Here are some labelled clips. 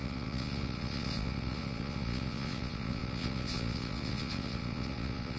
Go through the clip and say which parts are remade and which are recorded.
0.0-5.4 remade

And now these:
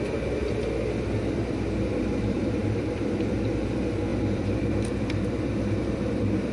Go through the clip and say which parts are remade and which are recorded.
0.0-6.5 remade

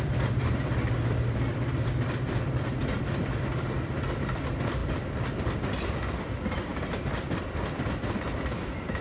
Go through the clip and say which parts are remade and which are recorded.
0.0-6.7 remade; 6.7-7.4 recorded; 7.4-9.0 remade

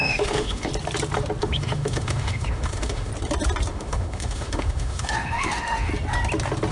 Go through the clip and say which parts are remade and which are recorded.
0.0-0.7 remade; 0.7-1.4 recorded; 1.4-3.1 remade; 3.1-3.7 recorded; 3.7-5.9 remade; 5.9-6.7 recorded

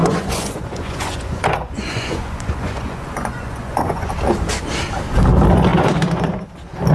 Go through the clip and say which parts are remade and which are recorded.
0.0-4.1 remade; 4.1-5.7 recorded; 5.7-6.5 remade; 6.5-6.9 recorded

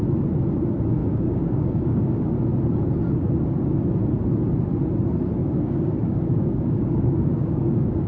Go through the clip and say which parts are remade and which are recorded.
0.0-1.0 recorded; 1.0-2.3 remade; 2.3-5.4 recorded; 5.4-8.1 remade

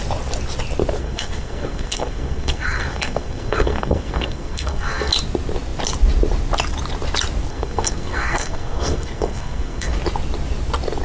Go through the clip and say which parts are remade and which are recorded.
0.0-1.0 recorded; 1.0-5.1 remade; 5.1-7.5 recorded; 7.5-10.0 remade; 10.0-11.0 recorded

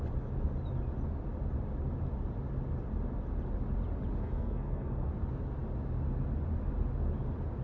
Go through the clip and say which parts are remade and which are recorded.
0.0-4.2 recorded; 4.2-5.1 remade; 5.1-7.6 recorded